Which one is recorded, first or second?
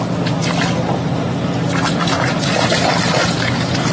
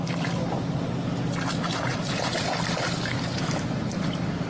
first